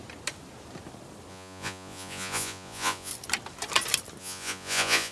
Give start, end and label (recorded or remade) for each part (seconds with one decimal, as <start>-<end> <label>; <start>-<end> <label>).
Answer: 0.0-1.3 recorded; 1.3-3.1 remade; 3.1-4.2 recorded; 4.2-5.1 remade